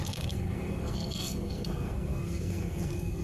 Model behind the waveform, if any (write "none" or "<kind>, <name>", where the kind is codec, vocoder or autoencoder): codec, SNAC